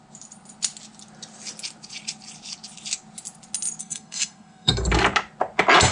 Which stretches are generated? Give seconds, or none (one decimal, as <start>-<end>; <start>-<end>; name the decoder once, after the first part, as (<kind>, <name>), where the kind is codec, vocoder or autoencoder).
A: 3.8-4.7 (codec, SNAC)